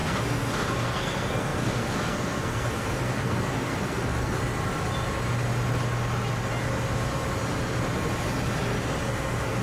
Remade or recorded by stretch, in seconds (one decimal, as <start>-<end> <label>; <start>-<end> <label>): 0.0-4.4 remade; 4.4-9.1 recorded; 9.1-9.6 remade